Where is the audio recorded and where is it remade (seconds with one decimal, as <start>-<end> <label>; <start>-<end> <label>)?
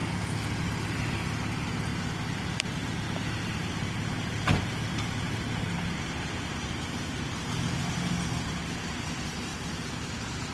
0.0-1.9 recorded; 1.9-7.1 remade; 7.1-9.5 recorded; 9.5-10.5 remade